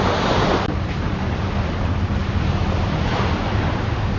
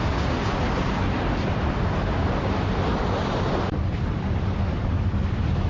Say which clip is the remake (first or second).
second